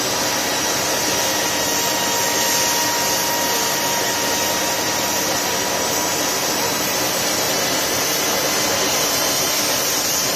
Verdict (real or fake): real